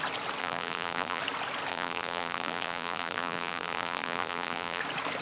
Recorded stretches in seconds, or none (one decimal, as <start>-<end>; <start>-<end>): 0.0-0.4; 1.2-1.7; 4.8-5.2